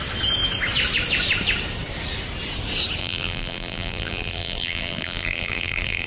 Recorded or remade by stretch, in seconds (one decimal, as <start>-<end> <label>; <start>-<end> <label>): 0.0-3.0 recorded; 3.0-6.1 remade